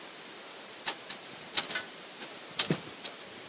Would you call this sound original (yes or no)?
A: no